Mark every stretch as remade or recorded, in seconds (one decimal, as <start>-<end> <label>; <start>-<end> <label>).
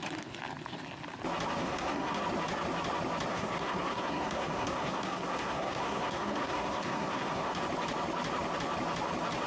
0.0-1.6 recorded; 1.6-2.2 remade; 2.2-3.3 recorded; 3.3-7.6 remade; 7.6-9.5 recorded